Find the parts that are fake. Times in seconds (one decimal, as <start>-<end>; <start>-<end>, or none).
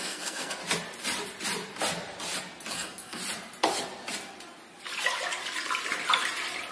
0.0-0.6; 2.7-3.2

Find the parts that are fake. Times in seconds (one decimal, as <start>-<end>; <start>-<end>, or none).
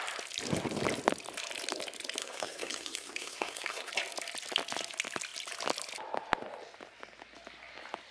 2.2-3.9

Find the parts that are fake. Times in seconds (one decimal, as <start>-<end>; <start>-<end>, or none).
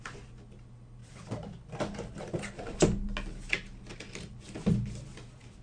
none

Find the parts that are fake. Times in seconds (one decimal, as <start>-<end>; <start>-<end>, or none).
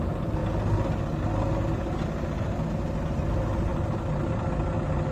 none